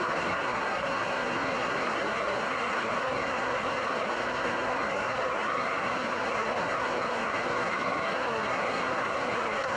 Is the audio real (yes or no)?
no